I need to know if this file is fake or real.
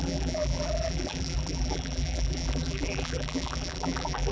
fake